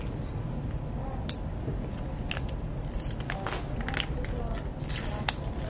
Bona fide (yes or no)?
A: yes